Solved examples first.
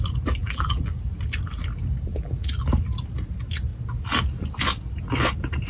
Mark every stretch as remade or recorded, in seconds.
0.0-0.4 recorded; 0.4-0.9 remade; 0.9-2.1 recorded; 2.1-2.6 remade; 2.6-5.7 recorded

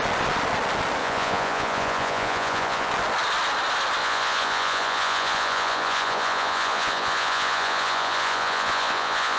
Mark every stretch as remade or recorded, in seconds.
0.0-1.0 recorded; 1.0-2.9 remade; 2.9-4.0 recorded; 4.0-9.4 remade

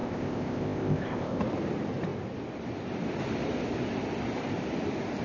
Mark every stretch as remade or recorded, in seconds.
0.0-1.4 remade; 1.4-5.2 recorded

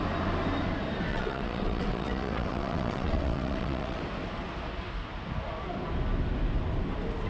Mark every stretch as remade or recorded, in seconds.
0.0-1.1 recorded; 1.1-4.0 remade; 4.0-7.3 recorded

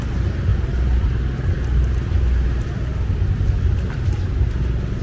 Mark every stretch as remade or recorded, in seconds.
0.0-5.0 recorded

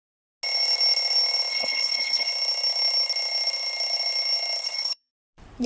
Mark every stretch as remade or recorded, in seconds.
0.0-1.5 recorded; 1.5-2.3 remade; 2.3-4.6 recorded; 4.6-5.1 remade; 5.1-5.7 recorded

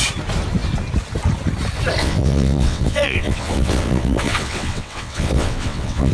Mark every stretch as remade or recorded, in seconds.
0.0-2.0 recorded; 2.0-6.1 remade